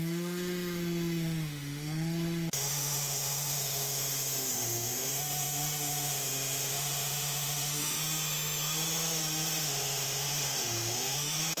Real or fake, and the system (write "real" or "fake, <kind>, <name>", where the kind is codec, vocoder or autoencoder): fake, autoencoder, DAC-VAE